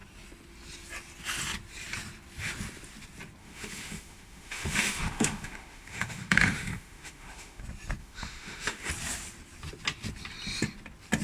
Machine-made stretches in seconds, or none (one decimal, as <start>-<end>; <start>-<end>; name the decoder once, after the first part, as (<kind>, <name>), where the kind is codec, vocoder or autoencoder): 3.4-7.6 (autoencoder, DAC-VAE); 8.0-8.9